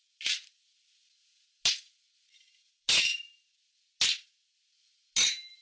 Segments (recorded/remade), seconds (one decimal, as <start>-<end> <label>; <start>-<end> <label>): 0.0-5.6 recorded